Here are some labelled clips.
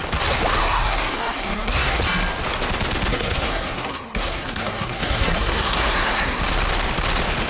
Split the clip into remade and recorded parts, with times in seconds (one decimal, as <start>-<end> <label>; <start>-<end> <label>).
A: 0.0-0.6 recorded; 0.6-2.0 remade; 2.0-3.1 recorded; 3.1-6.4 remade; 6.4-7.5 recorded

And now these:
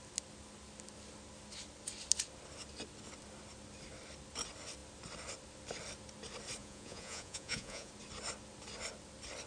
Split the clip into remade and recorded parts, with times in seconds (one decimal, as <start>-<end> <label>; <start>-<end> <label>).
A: 0.0-6.6 recorded; 6.6-7.9 remade; 7.9-9.5 recorded

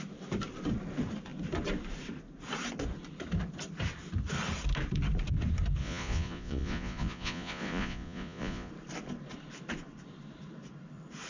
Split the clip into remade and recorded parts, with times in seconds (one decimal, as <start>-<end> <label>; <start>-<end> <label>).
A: 0.0-5.8 recorded; 5.8-8.7 remade; 8.7-11.3 recorded